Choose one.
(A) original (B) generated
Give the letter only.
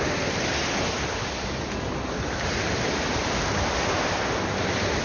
A